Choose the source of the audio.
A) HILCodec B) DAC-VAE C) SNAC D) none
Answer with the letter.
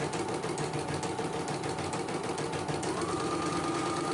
D